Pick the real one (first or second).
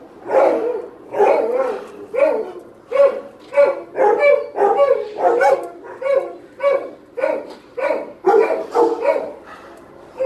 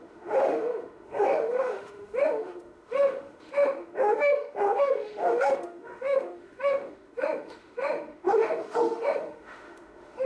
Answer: first